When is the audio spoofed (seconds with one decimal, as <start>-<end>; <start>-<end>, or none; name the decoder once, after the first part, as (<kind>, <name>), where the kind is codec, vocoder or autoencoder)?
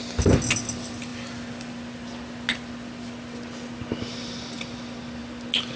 none